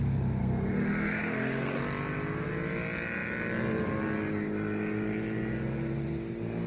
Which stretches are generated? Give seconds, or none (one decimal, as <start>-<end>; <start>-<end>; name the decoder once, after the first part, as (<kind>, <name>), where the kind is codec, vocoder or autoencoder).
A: 0.4-1.8 (codec, SNAC)